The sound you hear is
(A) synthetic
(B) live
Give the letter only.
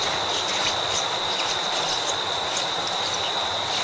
B